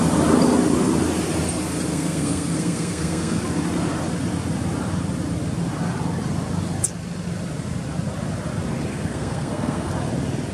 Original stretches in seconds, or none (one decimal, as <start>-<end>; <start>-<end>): 0.0-1.9; 3.4-8.9; 9.9-10.5